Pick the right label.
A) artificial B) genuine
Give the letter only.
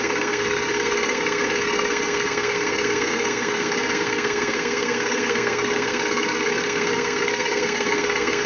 A